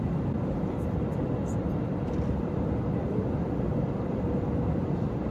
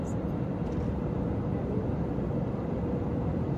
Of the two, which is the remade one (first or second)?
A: first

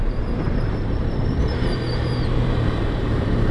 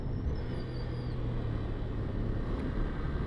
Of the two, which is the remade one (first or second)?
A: first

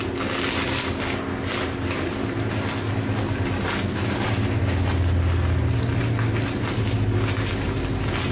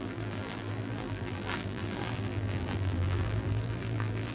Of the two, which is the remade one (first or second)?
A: second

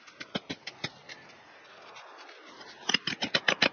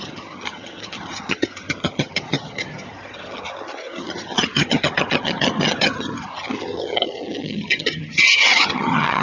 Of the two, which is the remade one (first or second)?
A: second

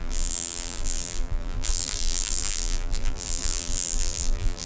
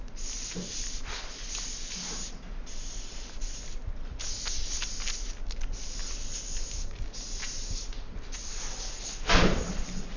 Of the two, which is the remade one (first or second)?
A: first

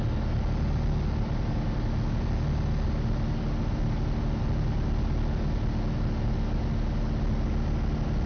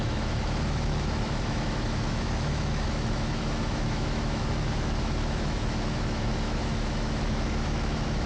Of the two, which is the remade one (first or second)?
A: second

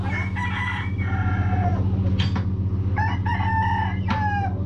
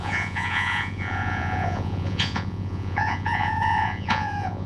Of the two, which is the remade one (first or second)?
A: second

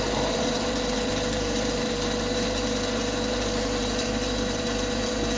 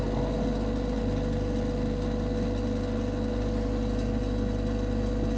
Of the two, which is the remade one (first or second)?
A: first